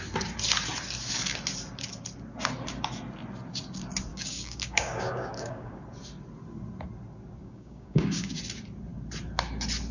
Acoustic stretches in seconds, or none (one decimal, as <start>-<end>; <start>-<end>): 0.0-4.1; 5.8-7.4; 8.4-9.9